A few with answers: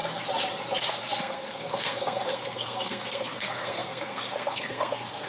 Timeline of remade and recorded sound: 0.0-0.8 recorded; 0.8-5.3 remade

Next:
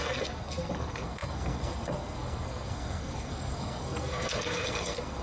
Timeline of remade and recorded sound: 0.0-5.2 remade

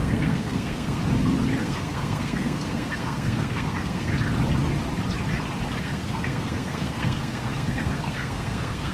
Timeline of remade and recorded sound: 0.0-1.0 remade; 1.0-1.6 recorded; 1.6-4.1 remade; 4.1-5.8 recorded; 5.8-8.9 remade

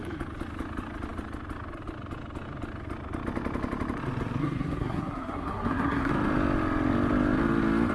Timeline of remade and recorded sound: 0.0-4.4 recorded; 4.4-6.1 remade; 6.1-7.9 recorded

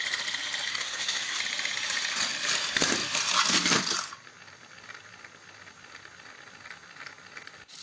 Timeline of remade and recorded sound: 0.0-0.7 recorded; 0.7-1.4 remade; 1.4-7.8 recorded

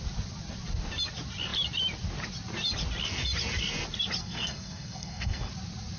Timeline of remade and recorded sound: 0.0-4.2 recorded; 4.2-5.5 remade; 5.5-6.0 recorded

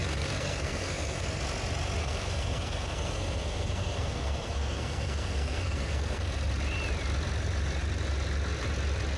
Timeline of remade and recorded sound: 0.0-1.4 remade; 1.4-2.0 recorded; 2.0-6.3 remade; 6.3-9.2 recorded

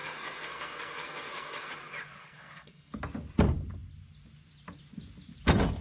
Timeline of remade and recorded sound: 0.0-1.7 remade; 1.7-2.2 recorded; 2.2-3.0 remade; 3.0-5.8 recorded